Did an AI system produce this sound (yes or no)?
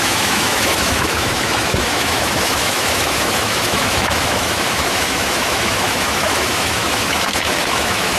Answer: yes